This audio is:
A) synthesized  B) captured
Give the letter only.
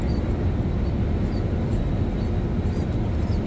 B